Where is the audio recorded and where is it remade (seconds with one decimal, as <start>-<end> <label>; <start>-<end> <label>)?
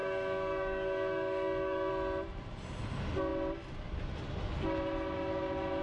0.0-1.9 remade; 1.9-5.8 recorded